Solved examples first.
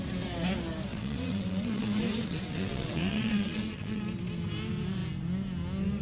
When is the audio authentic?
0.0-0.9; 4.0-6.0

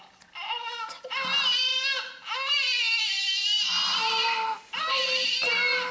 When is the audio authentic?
0.0-5.9

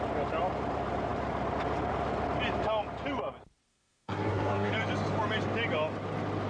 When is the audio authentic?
0.0-3.7; 4.7-6.5

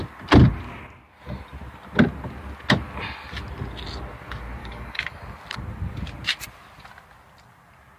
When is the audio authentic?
0.0-4.6; 5.2-8.0